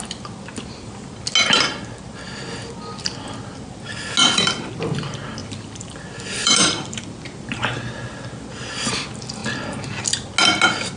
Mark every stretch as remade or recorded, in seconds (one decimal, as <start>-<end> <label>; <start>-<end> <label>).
0.0-5.4 recorded; 5.4-8.5 remade; 8.5-11.0 recorded